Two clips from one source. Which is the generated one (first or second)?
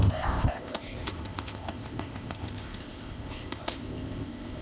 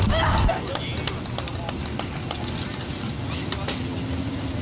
first